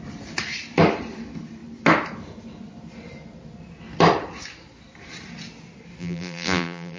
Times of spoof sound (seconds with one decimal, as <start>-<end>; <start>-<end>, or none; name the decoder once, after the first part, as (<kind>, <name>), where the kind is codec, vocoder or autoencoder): 6.0-7.0 (vocoder, BigVGAN v2)